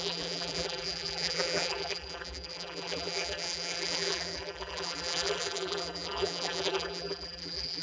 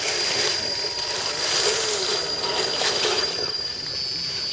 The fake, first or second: first